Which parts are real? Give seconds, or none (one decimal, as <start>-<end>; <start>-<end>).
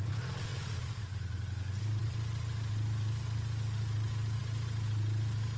0.0-5.6